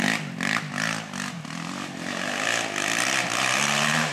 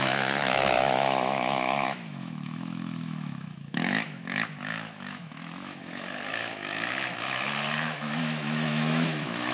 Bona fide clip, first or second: first